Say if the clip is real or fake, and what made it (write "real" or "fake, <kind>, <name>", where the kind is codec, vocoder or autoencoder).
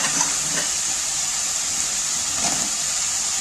real